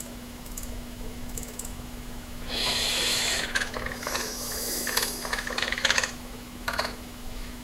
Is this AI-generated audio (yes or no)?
yes